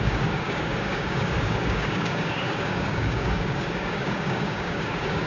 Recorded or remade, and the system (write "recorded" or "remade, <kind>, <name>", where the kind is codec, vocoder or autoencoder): remade, codec, DAC